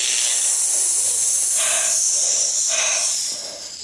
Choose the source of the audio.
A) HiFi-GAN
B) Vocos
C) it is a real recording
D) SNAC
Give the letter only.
C